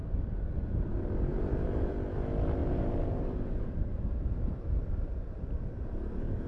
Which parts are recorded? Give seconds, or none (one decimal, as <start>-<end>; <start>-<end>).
0.0-1.3; 1.9-2.6; 5.0-6.5

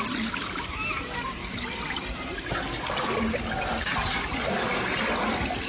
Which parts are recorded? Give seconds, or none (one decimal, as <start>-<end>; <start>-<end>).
0.0-1.4; 3.4-5.7

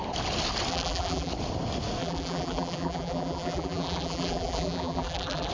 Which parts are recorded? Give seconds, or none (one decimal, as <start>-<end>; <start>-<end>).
0.0-0.7; 1.3-2.0

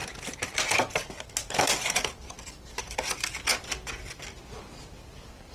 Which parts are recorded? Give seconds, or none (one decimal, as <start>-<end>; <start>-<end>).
0.0-2.8

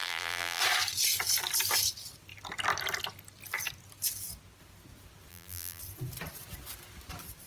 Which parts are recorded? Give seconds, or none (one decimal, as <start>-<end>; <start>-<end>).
0.6-5.3; 5.8-7.5

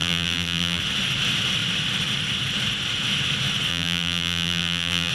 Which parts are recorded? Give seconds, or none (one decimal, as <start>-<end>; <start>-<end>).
0.8-3.7

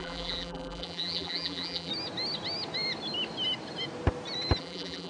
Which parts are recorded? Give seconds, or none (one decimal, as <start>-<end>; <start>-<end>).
1.9-4.6

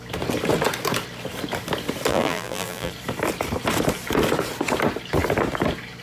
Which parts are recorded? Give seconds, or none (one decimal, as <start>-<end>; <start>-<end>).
0.0-2.1; 2.9-6.0